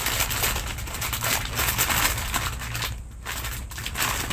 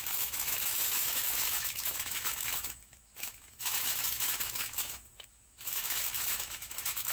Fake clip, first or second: second